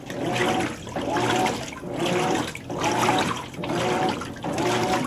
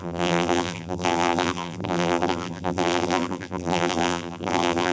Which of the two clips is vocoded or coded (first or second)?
second